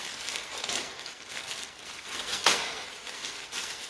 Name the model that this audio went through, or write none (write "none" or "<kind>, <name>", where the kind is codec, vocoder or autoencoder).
codec, SNAC